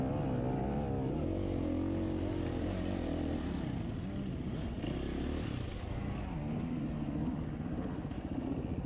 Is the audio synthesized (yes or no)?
no